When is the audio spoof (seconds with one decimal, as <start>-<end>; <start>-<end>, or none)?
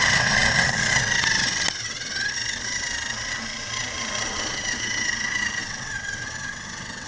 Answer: 5.6-7.1